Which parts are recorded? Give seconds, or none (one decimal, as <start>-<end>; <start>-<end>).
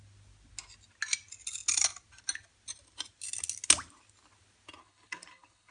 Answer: 0.0-4.8